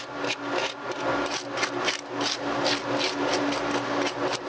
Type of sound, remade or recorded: recorded